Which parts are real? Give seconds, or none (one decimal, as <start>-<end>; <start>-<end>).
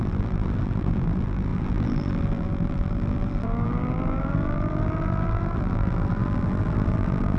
none